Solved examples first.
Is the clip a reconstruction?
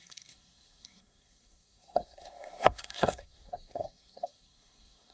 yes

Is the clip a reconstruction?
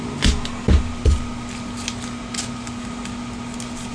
no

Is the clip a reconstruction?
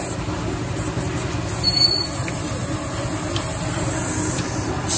no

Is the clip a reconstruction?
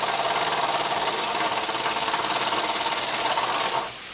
no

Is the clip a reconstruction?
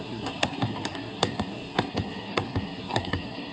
yes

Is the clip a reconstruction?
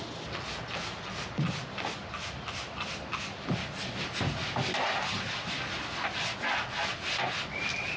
no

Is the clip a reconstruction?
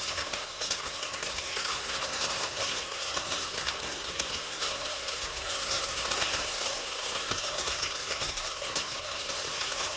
yes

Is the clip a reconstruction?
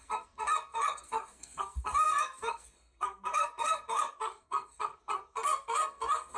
yes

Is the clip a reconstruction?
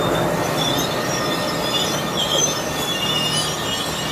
no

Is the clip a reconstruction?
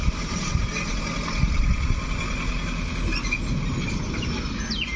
no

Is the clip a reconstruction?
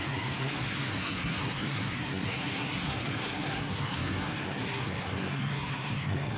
yes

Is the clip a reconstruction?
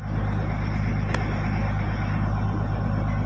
no